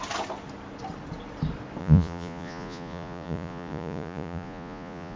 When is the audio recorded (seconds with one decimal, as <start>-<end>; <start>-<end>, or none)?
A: 0.0-1.8